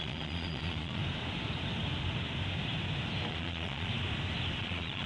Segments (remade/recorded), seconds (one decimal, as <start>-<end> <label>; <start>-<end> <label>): 0.0-1.0 remade; 1.0-3.3 recorded; 3.3-3.9 remade; 3.9-4.6 recorded; 4.6-5.1 remade